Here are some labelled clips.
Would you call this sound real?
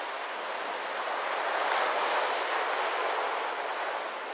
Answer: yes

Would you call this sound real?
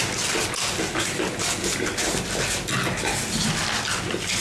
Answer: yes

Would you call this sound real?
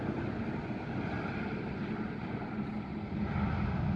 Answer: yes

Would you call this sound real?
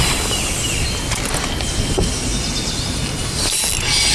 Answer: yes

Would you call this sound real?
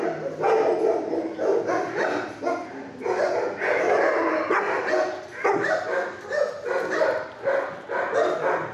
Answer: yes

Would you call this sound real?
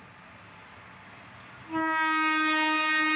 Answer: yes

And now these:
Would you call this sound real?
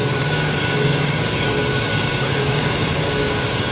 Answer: no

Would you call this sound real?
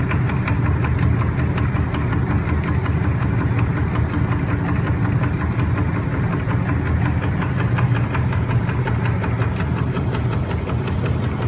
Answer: yes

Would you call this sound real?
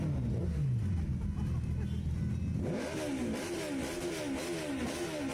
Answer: yes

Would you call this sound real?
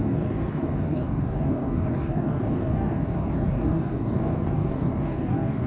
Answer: no